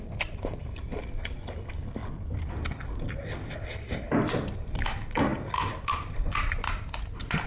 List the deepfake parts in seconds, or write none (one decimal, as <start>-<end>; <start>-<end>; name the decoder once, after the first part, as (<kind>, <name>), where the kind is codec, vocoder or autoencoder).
0.0-2.0 (vocoder, BigVGAN v2); 3.7-7.5